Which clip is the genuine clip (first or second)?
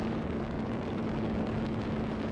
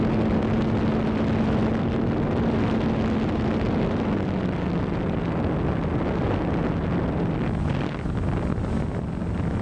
second